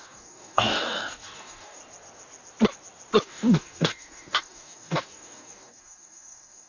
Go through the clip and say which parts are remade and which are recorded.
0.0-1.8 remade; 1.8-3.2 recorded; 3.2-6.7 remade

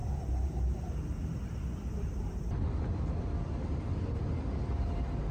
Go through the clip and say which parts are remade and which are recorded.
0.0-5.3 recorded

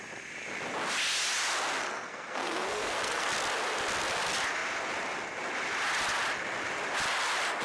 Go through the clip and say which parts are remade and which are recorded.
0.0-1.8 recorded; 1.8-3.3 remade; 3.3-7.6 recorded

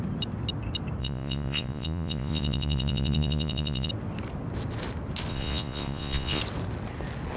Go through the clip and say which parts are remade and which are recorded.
0.0-1.0 recorded; 1.0-3.9 remade; 3.9-5.3 recorded; 5.3-6.4 remade; 6.4-7.4 recorded